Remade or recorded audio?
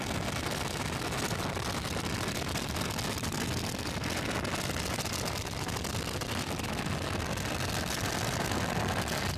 recorded